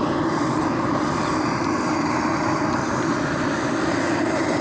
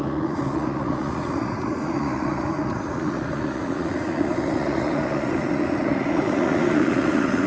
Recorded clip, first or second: first